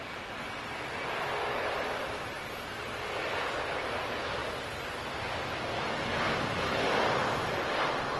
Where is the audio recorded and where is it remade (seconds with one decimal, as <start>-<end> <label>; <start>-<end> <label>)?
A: 0.0-8.2 recorded